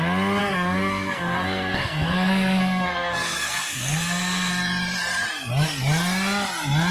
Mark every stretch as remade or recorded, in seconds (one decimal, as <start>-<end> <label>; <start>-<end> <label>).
0.0-0.4 recorded; 0.4-4.5 remade; 4.5-6.9 recorded